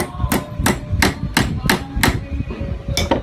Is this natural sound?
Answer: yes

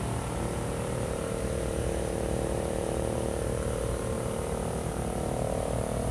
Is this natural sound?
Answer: no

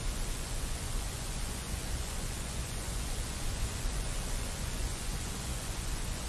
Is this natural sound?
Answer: no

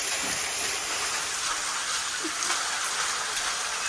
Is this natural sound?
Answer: yes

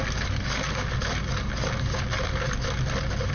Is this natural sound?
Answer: yes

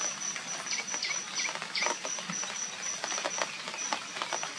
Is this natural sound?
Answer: yes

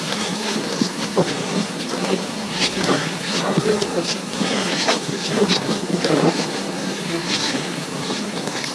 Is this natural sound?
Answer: no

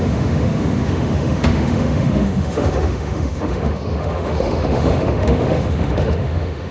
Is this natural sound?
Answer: no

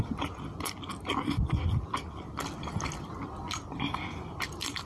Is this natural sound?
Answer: yes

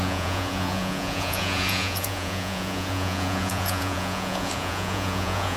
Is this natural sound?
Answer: no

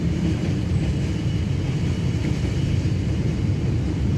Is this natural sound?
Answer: yes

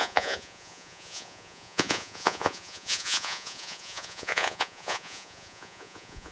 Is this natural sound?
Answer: no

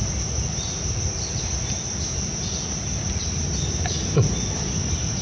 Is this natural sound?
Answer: yes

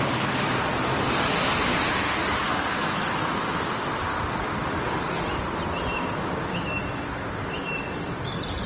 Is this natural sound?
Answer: yes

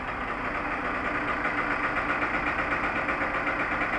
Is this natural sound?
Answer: yes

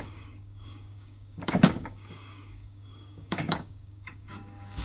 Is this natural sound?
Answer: no